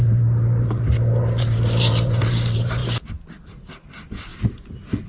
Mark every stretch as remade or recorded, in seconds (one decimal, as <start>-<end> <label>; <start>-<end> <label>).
0.0-4.3 remade; 4.3-5.1 recorded